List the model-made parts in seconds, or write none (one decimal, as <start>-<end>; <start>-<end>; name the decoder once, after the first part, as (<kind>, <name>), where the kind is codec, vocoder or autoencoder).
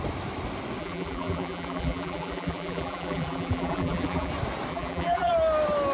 0.8-4.3 (vocoder, BigVGAN v2); 4.7-5.3